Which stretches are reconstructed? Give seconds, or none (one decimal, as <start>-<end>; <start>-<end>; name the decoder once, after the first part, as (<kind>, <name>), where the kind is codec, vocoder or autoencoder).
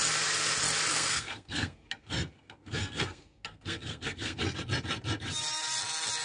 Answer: 0.9-4.6 (codec, SNAC)